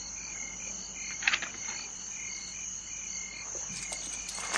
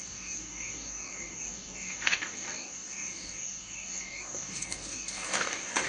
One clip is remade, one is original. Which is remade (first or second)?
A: second